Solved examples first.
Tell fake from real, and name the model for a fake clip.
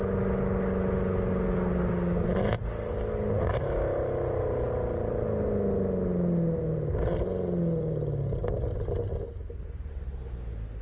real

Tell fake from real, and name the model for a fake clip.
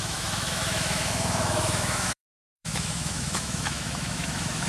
fake, autoencoder, DAC-VAE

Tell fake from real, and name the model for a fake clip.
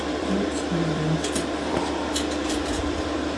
fake, vocoder, BigVGAN v2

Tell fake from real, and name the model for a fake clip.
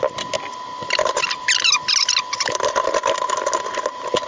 real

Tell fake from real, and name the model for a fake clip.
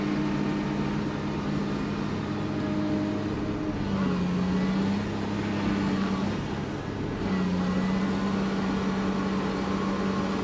real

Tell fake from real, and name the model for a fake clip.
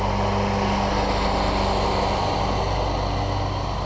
real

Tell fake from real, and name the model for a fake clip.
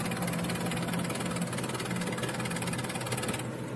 real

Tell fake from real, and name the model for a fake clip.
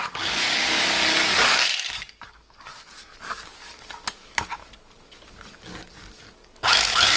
fake, codec, DAC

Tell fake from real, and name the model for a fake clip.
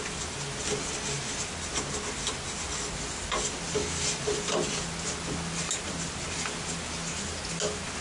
real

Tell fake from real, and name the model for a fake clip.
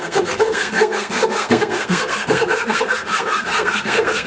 fake, codec, SNAC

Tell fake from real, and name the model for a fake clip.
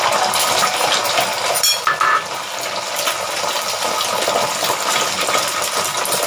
real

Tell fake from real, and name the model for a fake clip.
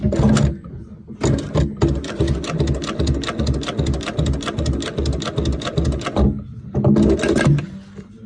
real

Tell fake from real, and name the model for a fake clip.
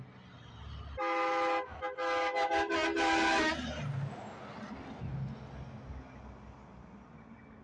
real